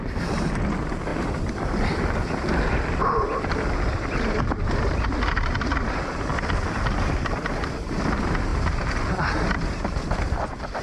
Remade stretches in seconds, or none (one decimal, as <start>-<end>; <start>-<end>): 1.1-2.6